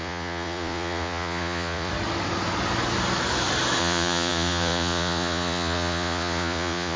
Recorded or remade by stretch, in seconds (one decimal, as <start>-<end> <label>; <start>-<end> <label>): 0.0-1.9 remade; 1.9-3.8 recorded; 3.8-7.0 remade